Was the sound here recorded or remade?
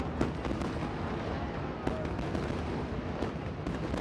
recorded